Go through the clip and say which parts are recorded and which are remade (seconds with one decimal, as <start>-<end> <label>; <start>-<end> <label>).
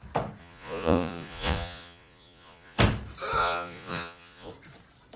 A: 0.0-0.4 recorded; 0.4-2.8 remade; 2.8-3.4 recorded; 3.4-4.5 remade; 4.5-5.2 recorded